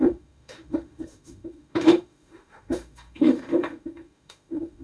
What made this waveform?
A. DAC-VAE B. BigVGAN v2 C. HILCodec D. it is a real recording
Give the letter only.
A